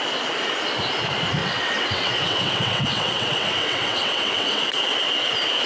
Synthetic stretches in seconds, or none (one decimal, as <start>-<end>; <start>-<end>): 1.4-4.8